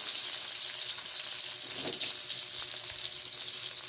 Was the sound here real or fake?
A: real